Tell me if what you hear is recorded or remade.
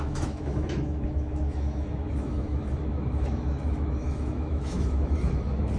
remade